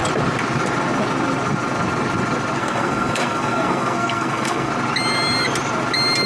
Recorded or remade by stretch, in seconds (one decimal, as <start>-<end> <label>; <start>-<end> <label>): 0.0-2.6 recorded; 2.6-4.7 remade; 4.7-6.3 recorded